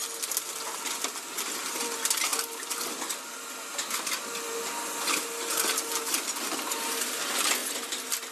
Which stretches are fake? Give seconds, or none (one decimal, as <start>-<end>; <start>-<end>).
7.6-8.3